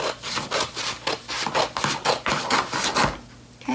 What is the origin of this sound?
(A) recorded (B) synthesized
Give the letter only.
A